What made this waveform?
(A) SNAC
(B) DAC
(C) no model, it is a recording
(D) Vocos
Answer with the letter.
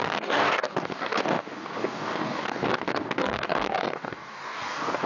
B